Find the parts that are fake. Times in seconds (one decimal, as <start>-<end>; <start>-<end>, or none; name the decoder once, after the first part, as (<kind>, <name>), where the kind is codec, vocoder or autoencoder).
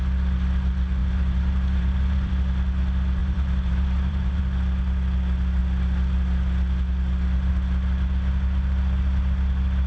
1.0-2.3 (vocoder, BigVGAN v2); 3.2-4.4